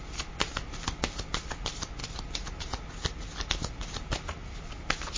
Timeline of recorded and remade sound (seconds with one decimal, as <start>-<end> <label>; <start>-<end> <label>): 0.0-5.2 recorded